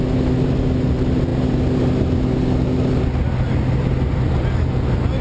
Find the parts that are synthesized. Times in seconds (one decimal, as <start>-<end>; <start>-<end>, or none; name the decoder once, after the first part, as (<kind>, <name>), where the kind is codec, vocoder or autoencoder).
none